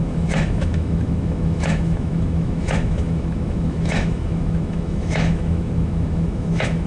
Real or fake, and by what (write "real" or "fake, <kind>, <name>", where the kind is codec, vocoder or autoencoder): fake, autoencoder, DAC-VAE